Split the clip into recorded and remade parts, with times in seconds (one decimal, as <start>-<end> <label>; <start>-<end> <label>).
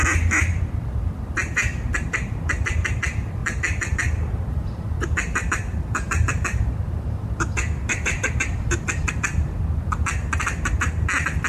0.0-3.4 recorded; 3.4-6.6 remade; 6.6-7.9 recorded; 7.9-9.5 remade; 9.5-11.5 recorded